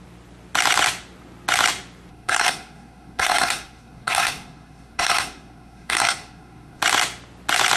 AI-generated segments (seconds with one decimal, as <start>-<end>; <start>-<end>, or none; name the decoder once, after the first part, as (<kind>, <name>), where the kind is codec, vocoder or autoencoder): 2.1-6.8 (codec, SNAC)